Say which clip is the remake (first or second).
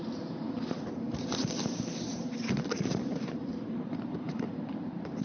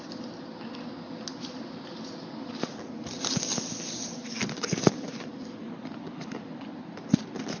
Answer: first